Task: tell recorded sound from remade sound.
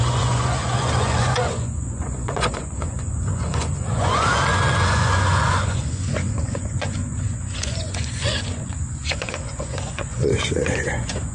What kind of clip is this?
remade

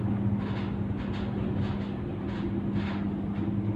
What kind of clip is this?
recorded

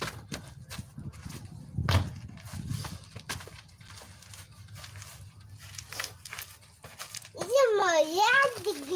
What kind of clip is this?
recorded